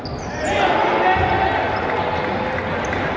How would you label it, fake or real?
real